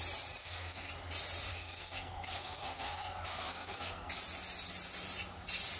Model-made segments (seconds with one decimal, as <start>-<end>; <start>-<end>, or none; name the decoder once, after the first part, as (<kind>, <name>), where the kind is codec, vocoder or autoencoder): 0.4-0.9 (codec, SNAC); 1.5-4.1